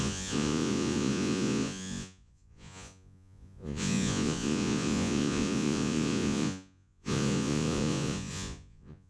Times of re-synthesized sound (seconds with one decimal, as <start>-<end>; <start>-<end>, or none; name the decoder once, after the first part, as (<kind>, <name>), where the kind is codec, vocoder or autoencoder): 0.0-9.1 (vocoder, Vocos)